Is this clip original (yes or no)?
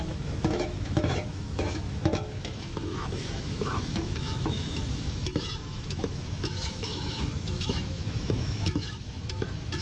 no